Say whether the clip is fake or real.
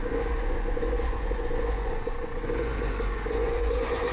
fake